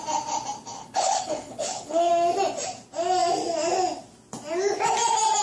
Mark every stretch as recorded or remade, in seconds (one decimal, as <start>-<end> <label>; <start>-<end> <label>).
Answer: 0.0-0.8 recorded; 0.8-2.1 remade; 2.1-5.4 recorded